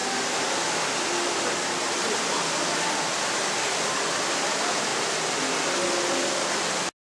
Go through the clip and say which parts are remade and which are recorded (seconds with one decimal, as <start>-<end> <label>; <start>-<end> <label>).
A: 0.0-7.0 recorded